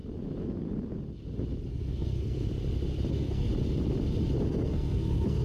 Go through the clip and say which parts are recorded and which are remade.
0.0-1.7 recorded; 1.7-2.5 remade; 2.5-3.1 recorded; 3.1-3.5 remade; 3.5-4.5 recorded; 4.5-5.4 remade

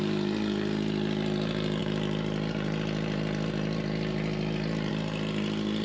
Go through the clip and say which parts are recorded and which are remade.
0.0-5.8 recorded

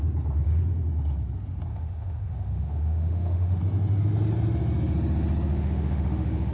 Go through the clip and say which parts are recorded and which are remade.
0.0-1.7 recorded; 1.7-3.6 remade; 3.6-5.5 recorded; 5.5-6.5 remade

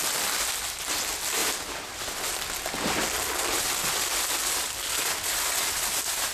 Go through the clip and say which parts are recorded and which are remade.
0.0-6.3 recorded

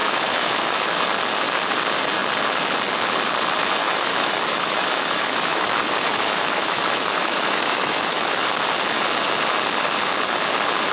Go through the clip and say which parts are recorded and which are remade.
0.0-1.0 remade; 1.0-3.8 recorded; 3.8-8.4 remade; 8.4-10.9 recorded

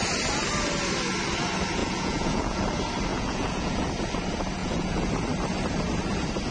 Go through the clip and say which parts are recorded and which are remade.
0.0-1.8 recorded; 1.8-2.6 remade; 2.6-3.1 recorded; 3.1-3.9 remade; 3.9-4.6 recorded; 4.6-5.1 remade; 5.1-6.5 recorded

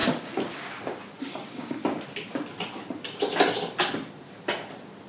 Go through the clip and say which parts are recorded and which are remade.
0.0-1.2 recorded; 1.2-1.8 remade; 1.8-5.1 recorded

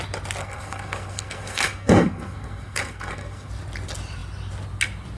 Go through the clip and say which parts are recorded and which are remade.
0.0-0.4 recorded; 0.4-3.5 remade; 3.5-5.2 recorded